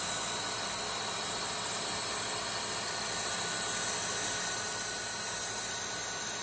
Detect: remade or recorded recorded